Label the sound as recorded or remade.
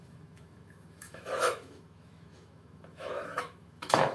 remade